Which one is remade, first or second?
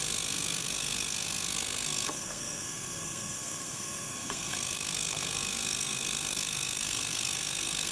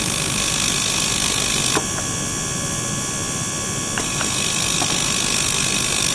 first